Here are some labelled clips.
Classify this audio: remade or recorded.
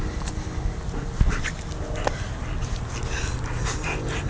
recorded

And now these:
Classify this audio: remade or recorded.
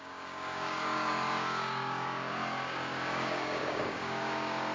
remade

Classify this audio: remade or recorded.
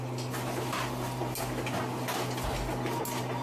recorded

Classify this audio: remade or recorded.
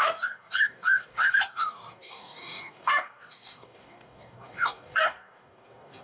remade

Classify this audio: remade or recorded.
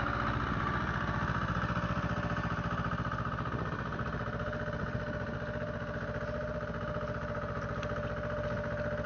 recorded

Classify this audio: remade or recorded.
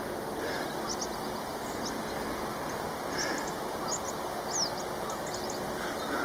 recorded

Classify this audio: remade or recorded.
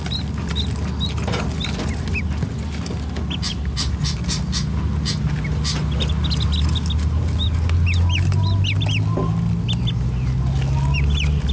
recorded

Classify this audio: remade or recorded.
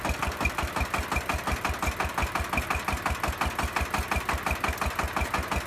recorded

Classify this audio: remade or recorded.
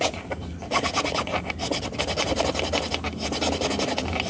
recorded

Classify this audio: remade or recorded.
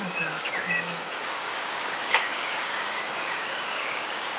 remade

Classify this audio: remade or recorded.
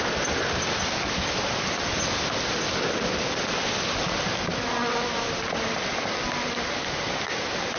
recorded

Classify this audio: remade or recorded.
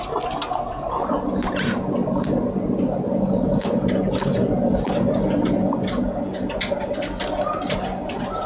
recorded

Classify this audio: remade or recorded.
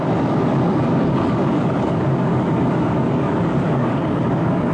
remade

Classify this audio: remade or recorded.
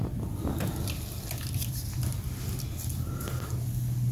recorded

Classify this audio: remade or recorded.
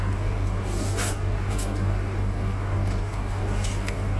remade